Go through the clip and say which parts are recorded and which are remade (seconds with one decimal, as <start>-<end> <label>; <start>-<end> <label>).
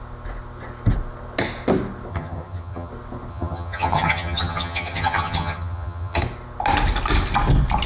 0.0-2.1 recorded; 2.1-2.9 remade; 2.9-3.3 recorded; 3.3-6.2 remade; 6.2-7.9 recorded